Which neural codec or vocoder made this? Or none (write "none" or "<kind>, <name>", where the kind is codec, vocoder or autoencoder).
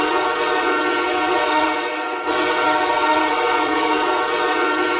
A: vocoder, WaveNeXt